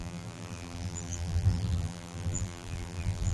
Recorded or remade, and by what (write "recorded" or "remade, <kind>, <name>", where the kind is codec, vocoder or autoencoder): remade, vocoder, BigVGAN v2